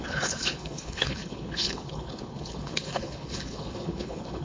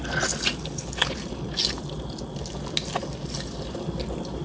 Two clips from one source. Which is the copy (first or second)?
first